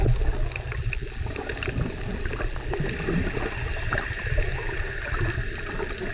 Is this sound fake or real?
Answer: real